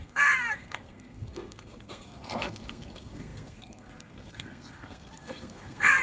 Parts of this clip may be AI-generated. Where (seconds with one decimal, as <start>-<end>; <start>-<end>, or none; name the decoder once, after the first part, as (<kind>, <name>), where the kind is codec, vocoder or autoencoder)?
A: 0.0-6.0 (codec, SNAC)